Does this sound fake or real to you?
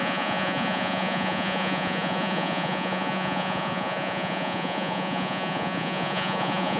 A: fake